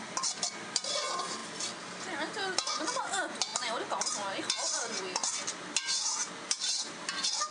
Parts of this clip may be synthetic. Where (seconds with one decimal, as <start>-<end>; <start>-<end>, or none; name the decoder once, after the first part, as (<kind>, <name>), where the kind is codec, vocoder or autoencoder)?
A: none